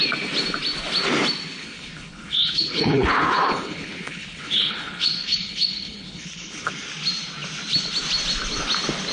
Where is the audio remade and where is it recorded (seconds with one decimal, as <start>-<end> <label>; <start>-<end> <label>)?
0.0-1.6 recorded; 1.6-6.7 remade; 6.7-9.1 recorded